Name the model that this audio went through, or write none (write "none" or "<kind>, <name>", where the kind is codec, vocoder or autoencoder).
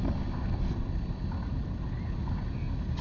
none